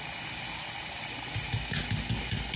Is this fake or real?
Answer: real